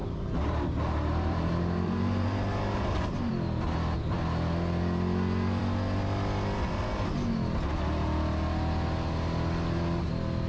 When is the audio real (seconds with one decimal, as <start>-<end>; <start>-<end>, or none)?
3.3-10.5